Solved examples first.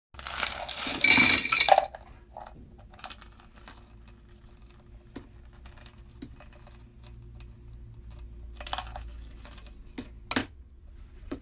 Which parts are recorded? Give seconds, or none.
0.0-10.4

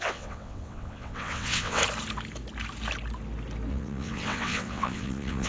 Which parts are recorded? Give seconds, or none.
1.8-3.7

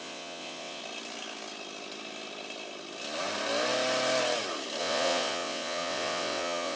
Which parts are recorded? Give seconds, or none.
0.8-4.8